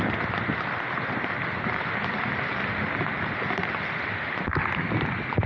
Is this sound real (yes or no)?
yes